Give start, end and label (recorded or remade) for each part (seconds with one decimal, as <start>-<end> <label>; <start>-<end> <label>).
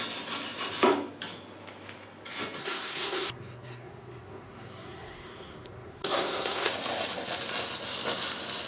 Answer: 0.0-2.6 recorded; 2.6-6.7 remade; 6.7-8.7 recorded